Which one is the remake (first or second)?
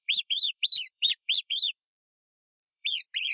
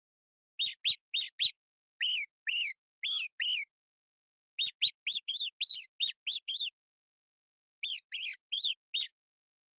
first